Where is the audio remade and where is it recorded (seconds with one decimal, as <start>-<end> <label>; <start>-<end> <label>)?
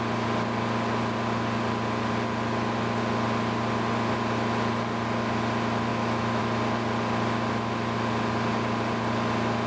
0.0-5.9 recorded; 5.9-6.4 remade; 6.4-9.7 recorded